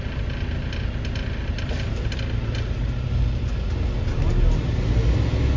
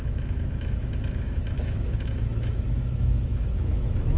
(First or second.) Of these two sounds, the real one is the first